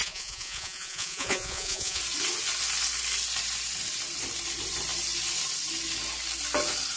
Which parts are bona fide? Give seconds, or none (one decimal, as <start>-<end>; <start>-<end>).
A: 2.0-7.0